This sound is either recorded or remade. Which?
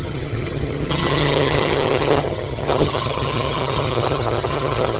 remade